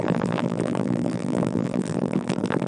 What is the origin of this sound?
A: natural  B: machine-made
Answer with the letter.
B